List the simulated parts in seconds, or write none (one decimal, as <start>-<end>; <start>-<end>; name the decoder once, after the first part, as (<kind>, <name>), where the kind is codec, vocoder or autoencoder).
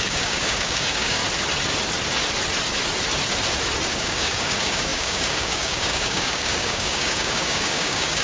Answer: 0.0-1.2 (codec, DAC); 3.9-8.2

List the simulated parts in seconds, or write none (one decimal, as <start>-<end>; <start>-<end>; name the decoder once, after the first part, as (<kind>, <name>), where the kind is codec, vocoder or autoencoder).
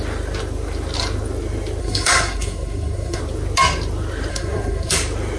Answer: 1.8-3.2 (codec, SNAC); 4.3-4.9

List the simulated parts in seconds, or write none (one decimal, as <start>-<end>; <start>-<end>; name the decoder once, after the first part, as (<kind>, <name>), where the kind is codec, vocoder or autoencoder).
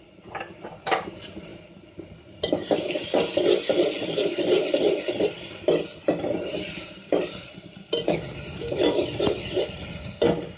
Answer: none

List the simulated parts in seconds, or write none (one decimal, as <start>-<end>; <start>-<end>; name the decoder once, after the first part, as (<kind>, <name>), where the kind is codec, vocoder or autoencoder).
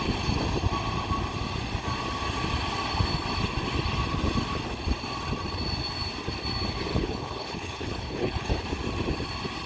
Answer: 6.9-8.6 (codec, HILCodec)